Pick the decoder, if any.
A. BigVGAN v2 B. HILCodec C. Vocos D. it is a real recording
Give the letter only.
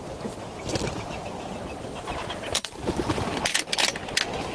D